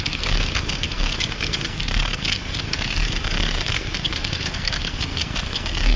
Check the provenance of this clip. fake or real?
fake